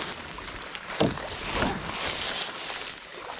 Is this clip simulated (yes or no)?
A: no